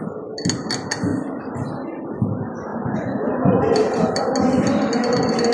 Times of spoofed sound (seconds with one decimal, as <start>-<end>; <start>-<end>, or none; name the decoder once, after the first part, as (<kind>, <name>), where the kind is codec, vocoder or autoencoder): 2.7-3.7 (vocoder, Vocos)